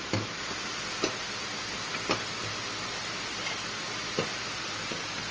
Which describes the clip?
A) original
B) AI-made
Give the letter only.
A